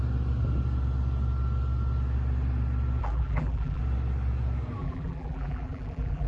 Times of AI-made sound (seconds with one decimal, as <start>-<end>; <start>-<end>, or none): 3.0-3.8; 4.8-6.3